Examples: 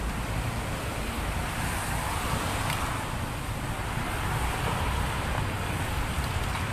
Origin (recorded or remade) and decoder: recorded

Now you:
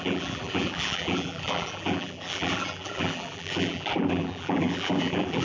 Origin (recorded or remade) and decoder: remade, vocoder, BigVGAN v2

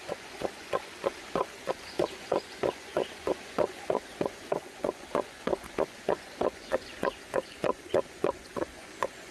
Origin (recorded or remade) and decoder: remade, vocoder, Vocos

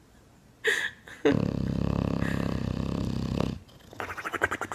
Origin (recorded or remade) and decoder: recorded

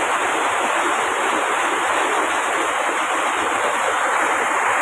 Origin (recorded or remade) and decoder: recorded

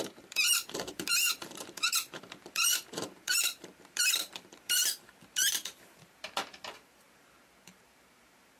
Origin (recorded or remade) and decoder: remade, vocoder, BigVGAN v2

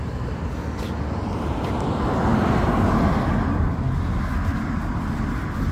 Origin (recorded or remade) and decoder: recorded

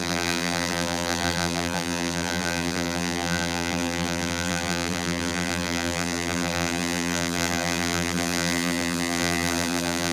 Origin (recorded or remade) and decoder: remade, vocoder, BigVGAN v2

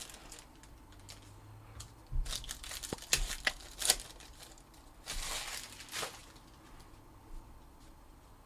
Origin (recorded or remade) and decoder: recorded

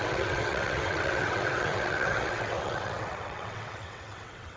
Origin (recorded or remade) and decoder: remade, vocoder, WaveNeXt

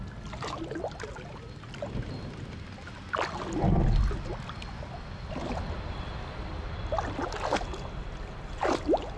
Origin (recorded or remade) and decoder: recorded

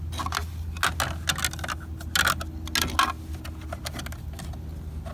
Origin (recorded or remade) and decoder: recorded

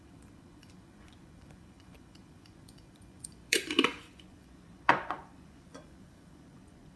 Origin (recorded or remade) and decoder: remade, vocoder, Vocos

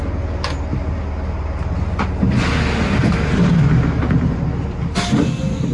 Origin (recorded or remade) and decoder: recorded